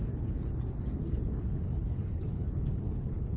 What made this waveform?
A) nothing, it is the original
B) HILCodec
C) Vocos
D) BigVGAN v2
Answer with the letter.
B